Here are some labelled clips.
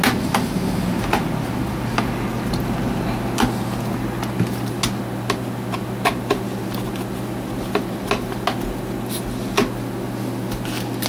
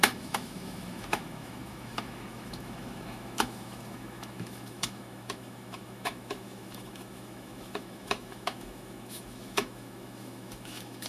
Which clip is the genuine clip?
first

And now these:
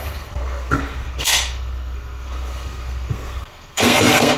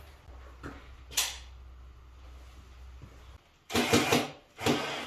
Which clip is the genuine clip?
second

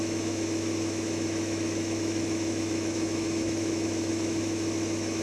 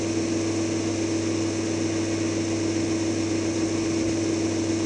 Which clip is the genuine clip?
second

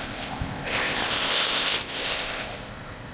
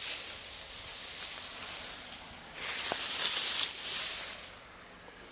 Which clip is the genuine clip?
second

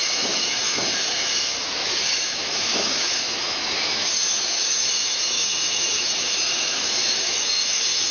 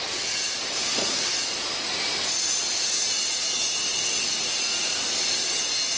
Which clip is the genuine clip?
second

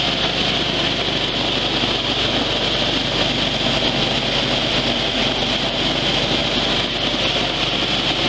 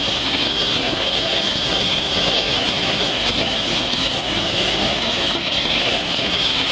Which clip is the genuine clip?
first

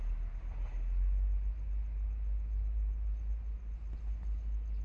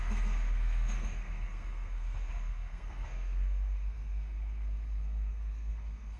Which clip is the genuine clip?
first